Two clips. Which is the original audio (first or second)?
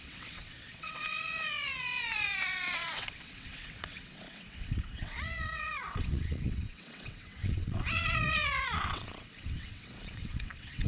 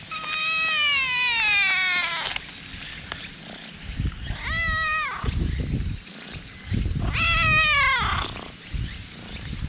second